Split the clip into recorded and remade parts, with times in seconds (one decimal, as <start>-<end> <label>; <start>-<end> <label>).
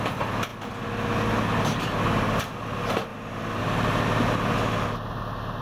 0.0-5.6 recorded